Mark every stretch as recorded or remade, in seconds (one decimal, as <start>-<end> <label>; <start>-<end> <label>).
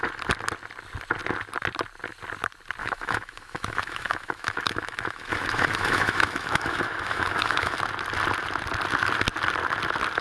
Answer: 0.0-2.8 recorded; 2.8-7.8 remade; 7.8-10.2 recorded